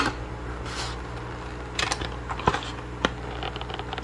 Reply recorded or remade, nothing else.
recorded